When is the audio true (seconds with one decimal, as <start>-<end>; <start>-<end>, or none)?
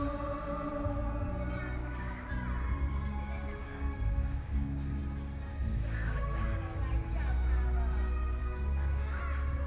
0.0-1.8; 2.3-3.6; 5.0-5.5; 6.8-8.4; 9.2-9.7